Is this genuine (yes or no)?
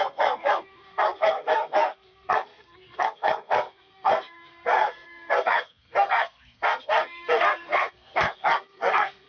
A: no